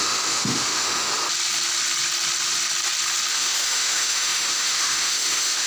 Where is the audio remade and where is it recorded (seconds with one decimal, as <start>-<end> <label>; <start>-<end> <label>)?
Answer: 0.0-1.1 remade; 1.1-3.3 recorded; 3.3-5.7 remade